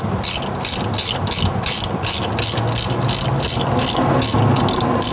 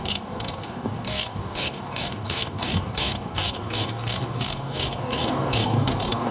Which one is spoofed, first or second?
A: second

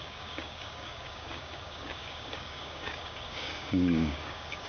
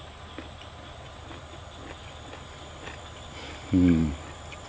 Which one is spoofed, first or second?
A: first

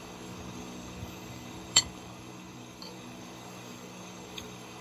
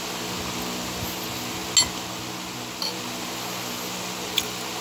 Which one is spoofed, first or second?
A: first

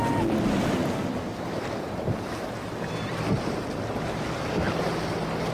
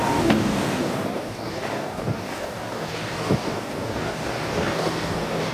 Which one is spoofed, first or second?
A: second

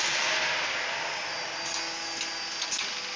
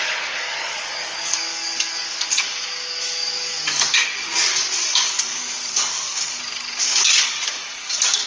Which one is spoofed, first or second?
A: second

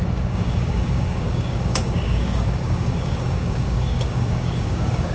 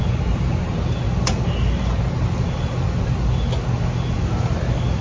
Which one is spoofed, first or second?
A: first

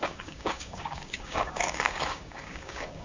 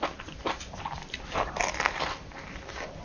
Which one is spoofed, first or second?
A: first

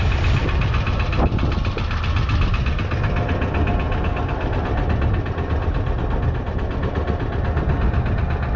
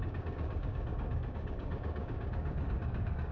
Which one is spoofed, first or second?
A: second